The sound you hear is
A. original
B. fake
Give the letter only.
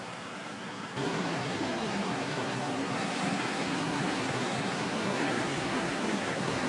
B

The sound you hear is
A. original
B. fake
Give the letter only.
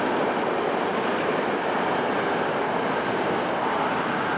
A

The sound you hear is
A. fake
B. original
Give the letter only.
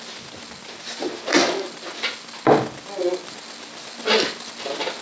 B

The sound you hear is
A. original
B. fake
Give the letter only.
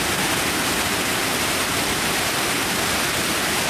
A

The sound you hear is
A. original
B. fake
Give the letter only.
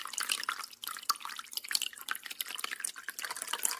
A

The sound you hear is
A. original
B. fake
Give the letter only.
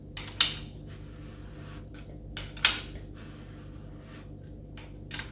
A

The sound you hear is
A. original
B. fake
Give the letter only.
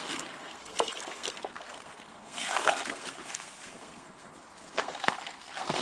B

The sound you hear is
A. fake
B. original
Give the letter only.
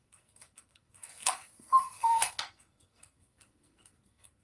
A